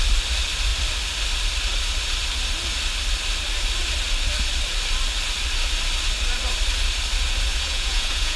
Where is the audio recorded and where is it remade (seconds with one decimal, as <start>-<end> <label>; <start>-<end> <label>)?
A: 0.0-7.5 recorded; 7.5-8.4 remade